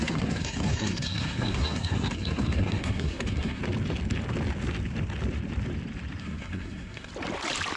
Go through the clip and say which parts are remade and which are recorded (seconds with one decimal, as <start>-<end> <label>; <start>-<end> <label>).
0.0-3.6 remade; 3.6-6.2 recorded; 6.2-7.1 remade; 7.1-7.8 recorded